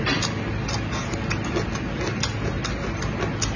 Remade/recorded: recorded